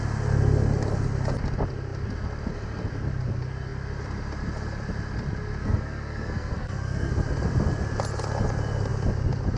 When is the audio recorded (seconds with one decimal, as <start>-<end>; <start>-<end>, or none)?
0.0-5.6; 7.1-9.6